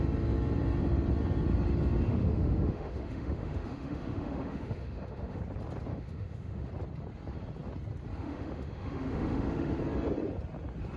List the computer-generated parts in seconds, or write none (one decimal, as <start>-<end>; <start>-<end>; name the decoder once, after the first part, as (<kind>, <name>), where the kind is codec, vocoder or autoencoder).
2.1-5.4 (autoencoder, DAC-VAE); 5.9-6.7; 8.2-9.8